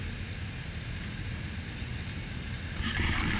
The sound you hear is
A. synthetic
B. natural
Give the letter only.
B